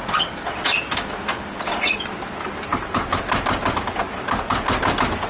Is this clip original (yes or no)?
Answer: yes